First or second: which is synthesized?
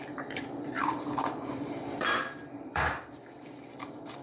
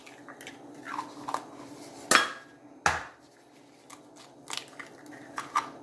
first